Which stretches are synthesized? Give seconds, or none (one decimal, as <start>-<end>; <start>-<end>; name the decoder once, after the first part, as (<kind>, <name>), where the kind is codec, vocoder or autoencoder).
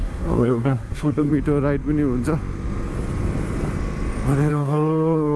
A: 0.0-1.3 (codec, SNAC); 4.5-5.4